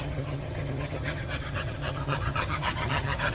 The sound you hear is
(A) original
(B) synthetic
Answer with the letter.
B